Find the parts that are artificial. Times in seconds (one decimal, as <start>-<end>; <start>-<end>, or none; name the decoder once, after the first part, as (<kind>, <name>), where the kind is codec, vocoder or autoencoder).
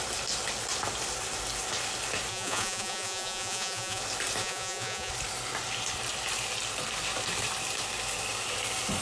2.3-4.0 (vocoder, Vocos); 4.4-5.1